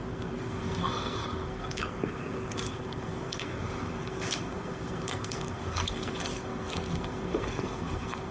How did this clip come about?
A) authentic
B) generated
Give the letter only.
B